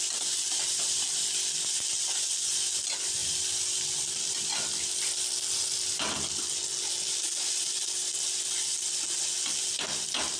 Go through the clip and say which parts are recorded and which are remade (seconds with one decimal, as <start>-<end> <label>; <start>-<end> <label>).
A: 0.0-3.2 recorded; 3.2-6.1 remade; 6.1-10.4 recorded